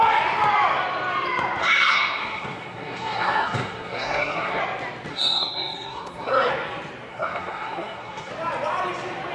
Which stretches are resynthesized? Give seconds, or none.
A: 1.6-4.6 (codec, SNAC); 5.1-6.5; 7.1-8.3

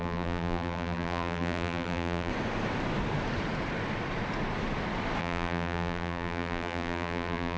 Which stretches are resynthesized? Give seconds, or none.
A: 0.0-2.3 (vocoder, BigVGAN v2); 5.2-7.6